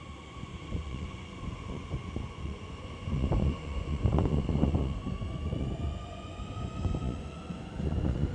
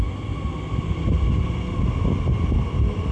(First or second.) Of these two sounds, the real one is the second